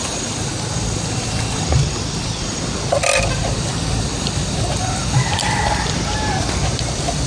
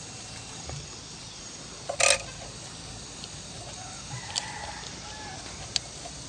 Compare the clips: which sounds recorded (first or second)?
second